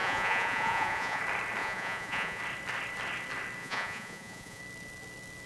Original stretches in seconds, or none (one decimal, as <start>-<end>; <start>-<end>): 1.2-1.6; 2.4-3.6; 4.6-5.5